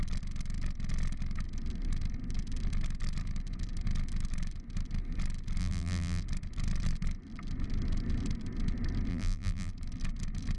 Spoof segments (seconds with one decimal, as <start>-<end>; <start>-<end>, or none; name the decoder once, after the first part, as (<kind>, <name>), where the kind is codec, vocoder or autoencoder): 5.6-6.2 (vocoder, BigVGAN v2); 9.1-9.7